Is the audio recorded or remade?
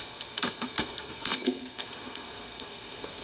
remade